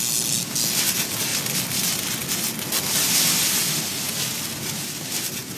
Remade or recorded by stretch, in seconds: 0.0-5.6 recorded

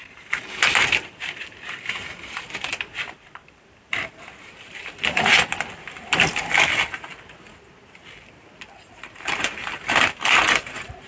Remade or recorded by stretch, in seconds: 0.0-5.3 remade; 5.3-8.9 recorded; 8.9-11.1 remade